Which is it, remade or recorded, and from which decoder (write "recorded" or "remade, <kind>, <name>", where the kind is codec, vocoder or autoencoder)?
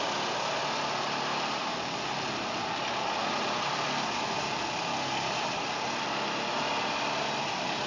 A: recorded